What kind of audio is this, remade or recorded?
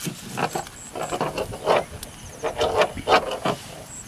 recorded